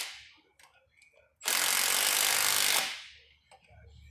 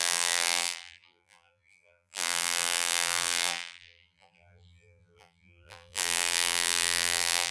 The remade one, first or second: second